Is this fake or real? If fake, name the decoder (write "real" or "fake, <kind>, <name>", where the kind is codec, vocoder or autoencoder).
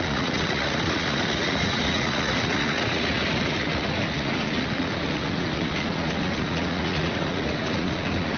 fake, vocoder, Vocos